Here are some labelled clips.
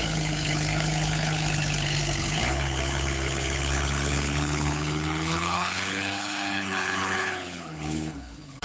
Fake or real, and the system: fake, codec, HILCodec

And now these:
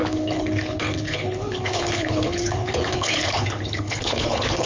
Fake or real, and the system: fake, codec, HILCodec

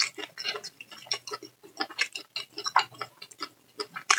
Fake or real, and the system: real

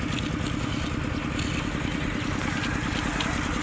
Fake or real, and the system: real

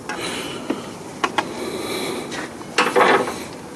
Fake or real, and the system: real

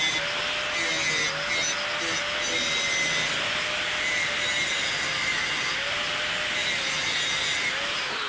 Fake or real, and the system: real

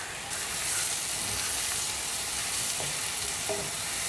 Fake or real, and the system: real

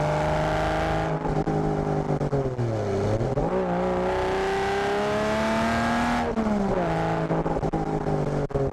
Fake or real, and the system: real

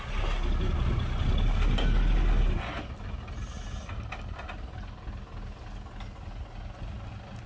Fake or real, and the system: real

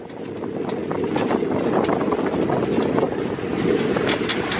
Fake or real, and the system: real